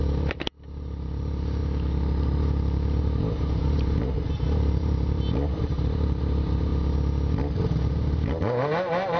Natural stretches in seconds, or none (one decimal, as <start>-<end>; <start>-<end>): 1.6-3.0; 6.7-7.5